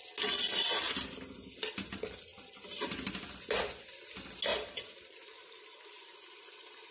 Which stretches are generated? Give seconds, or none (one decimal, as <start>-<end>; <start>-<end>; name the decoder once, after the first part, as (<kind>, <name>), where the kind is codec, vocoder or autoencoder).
4.5-6.9 (vocoder, BigVGAN v2)